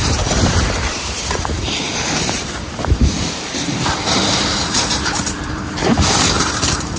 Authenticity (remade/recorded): remade